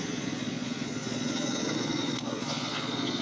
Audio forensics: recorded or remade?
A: remade